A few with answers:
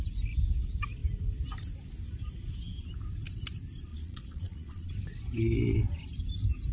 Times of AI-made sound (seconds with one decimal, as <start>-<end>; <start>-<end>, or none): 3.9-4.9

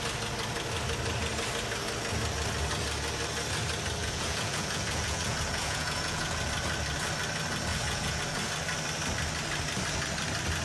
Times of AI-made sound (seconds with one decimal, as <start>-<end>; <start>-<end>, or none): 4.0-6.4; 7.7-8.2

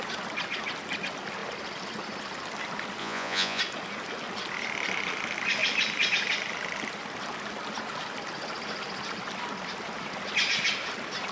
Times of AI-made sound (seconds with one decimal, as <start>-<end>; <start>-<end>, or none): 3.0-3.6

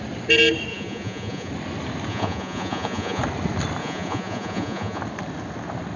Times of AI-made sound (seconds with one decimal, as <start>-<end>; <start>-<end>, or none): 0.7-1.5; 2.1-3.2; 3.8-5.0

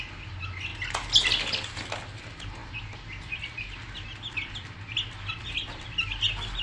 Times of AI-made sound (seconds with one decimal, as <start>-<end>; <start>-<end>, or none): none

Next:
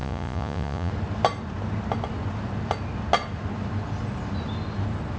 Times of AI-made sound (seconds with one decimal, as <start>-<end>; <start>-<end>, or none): 0.0-0.9

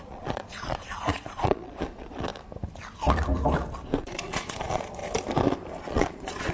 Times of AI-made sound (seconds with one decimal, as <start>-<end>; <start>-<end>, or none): 0.0-2.3; 4.0-5.0; 5.8-6.5